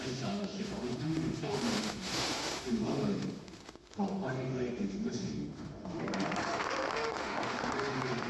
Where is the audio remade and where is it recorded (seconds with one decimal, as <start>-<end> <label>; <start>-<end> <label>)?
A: 0.0-8.3 remade